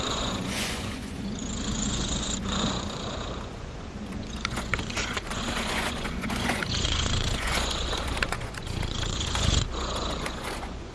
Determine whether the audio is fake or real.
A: fake